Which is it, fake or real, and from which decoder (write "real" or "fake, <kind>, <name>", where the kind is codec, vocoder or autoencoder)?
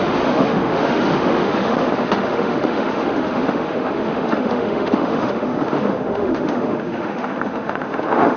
fake, autoencoder, DAC-VAE